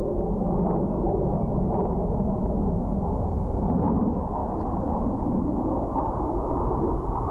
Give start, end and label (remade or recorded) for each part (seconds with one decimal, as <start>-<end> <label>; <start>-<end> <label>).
0.0-7.3 recorded